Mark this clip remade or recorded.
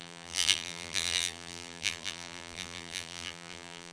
remade